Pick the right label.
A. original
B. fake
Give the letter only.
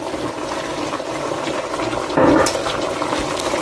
A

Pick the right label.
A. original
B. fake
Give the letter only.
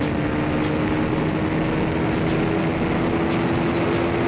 A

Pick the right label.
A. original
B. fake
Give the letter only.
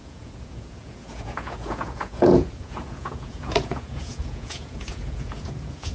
B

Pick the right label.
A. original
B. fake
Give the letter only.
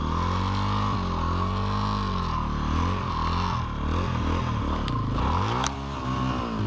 A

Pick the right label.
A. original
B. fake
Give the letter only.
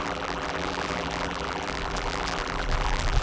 B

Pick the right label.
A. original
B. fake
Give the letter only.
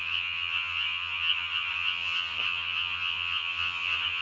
B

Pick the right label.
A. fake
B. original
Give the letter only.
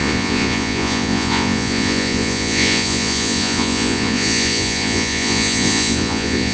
A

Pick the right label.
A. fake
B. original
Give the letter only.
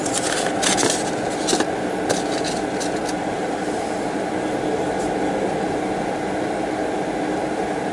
B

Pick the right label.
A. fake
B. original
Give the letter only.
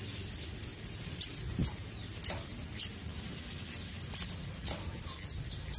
B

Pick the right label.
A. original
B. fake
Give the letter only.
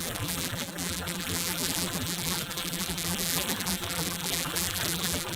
B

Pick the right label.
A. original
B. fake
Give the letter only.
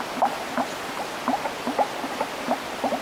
A